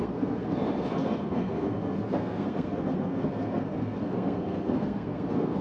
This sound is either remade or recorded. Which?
remade